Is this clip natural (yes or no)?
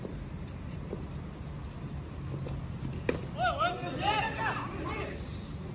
yes